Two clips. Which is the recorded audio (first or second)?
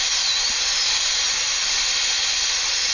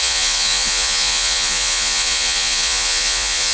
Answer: first